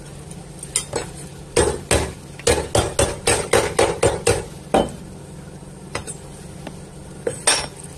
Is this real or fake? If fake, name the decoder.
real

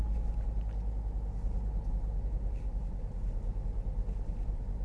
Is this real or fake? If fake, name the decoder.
real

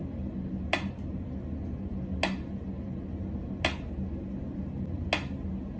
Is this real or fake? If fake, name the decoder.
real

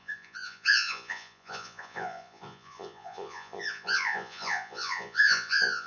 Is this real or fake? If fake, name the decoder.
fake, vocoder, Vocos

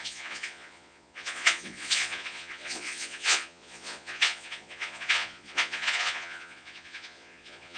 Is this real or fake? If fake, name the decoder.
fake, vocoder, Vocos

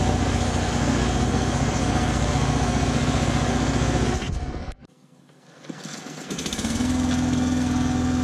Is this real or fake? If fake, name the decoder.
fake, codec, SNAC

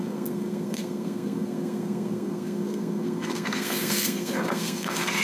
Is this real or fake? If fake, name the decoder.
fake, codec, SNAC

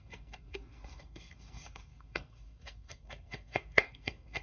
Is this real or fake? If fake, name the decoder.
fake, codec, SNAC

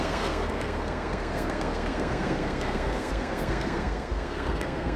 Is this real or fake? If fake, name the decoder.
fake, codec, SNAC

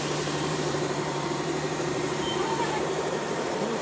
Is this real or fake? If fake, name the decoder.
fake, vocoder, BigVGAN v2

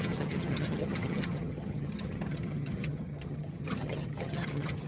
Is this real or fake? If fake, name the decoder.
fake, vocoder, HiFi-GAN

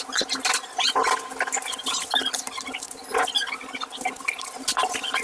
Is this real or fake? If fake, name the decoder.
real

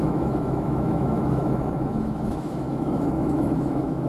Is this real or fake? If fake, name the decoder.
fake, autoencoder, DAC-VAE